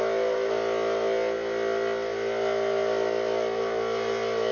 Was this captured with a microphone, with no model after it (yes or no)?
yes